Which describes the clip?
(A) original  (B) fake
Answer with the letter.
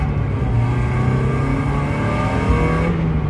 A